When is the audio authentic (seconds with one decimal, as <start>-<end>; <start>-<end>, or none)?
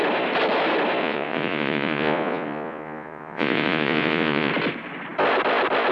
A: 0.0-1.0; 4.5-5.9